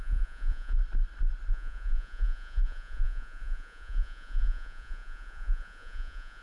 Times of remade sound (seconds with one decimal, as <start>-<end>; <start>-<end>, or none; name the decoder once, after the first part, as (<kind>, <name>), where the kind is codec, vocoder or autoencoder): 0.0-0.8 (vocoder, Vocos); 1.5-6.4